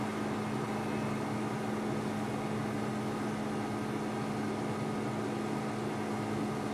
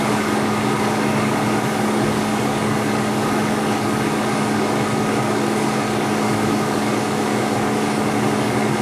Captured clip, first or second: first